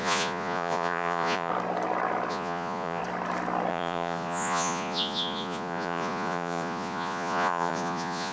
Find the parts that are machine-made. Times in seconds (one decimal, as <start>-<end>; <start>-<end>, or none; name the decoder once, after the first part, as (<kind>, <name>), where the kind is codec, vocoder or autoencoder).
0.0-1.5 (vocoder, Vocos); 2.3-3.0; 3.7-8.3